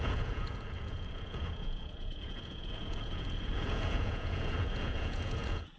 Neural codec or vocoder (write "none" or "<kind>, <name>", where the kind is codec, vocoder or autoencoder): vocoder, Vocos